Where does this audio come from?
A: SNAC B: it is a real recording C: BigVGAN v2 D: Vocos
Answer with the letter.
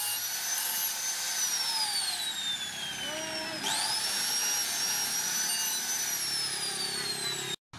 B